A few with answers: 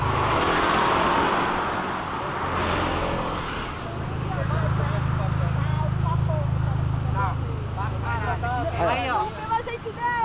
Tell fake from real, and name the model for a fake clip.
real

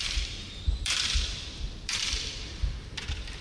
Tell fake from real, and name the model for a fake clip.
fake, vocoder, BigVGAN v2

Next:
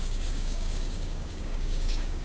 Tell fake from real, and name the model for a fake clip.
fake, codec, DAC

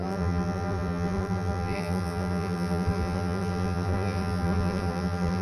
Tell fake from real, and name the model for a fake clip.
fake, vocoder, BigVGAN v2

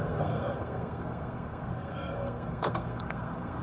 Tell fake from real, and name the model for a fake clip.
fake, codec, SNAC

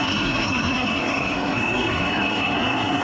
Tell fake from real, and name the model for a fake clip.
fake, codec, SNAC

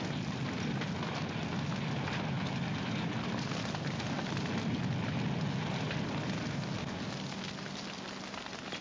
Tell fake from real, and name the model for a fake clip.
real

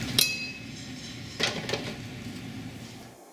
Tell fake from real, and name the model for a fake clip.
real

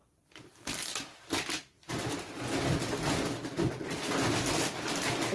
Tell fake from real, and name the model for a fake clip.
real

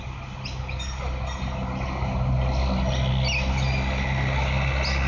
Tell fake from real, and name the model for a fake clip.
real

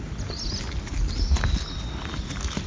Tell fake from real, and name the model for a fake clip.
real